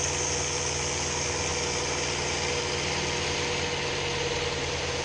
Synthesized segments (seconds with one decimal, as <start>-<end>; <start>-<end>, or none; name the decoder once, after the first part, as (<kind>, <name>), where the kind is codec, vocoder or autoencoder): none